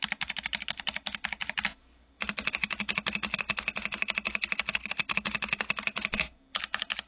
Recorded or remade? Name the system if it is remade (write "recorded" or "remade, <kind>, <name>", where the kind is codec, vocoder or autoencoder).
recorded